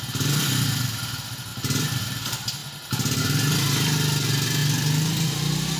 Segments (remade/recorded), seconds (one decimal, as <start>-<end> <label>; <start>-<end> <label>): 0.0-5.8 recorded